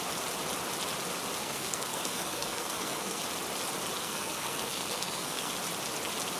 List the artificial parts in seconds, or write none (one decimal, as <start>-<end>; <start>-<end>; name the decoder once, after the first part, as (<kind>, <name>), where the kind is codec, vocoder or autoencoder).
1.4-3.2 (codec, SNAC); 4.0-5.5